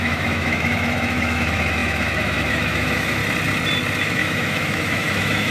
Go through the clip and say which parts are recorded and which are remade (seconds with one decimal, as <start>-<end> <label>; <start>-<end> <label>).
0.0-3.2 remade; 3.2-4.0 recorded; 4.0-5.5 remade